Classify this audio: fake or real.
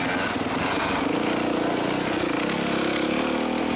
real